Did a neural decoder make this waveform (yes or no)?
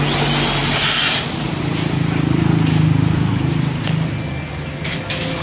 no